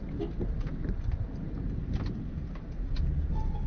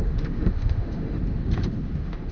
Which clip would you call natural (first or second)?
first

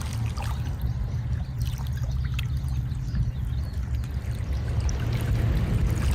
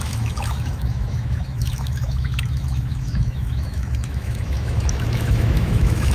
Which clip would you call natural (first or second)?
first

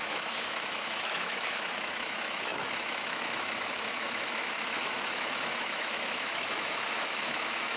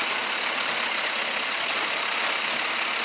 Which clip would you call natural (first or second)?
second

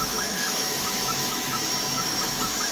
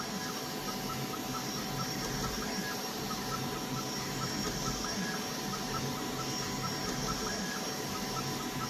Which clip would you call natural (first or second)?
second